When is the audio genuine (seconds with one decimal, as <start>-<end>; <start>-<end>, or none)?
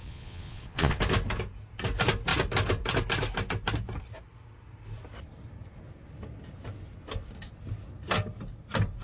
1.0-9.0